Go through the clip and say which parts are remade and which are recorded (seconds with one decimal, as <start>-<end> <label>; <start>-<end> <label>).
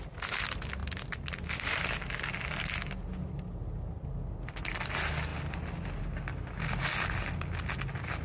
0.0-8.2 recorded